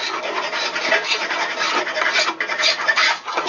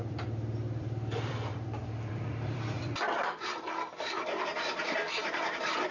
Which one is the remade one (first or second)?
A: second